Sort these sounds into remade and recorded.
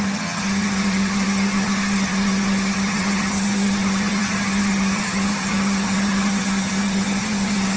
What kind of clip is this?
remade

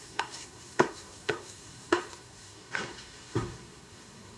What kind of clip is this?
remade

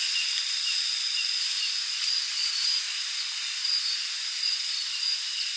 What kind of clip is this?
recorded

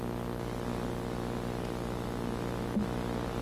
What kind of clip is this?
recorded